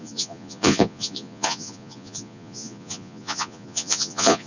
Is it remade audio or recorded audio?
remade